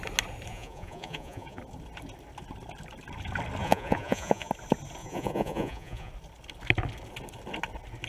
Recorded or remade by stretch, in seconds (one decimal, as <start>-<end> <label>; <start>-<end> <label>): 0.0-0.5 recorded; 0.5-1.6 remade; 1.6-3.6 recorded; 3.6-4.5 remade; 4.5-5.0 recorded; 5.0-6.1 remade; 6.1-8.1 recorded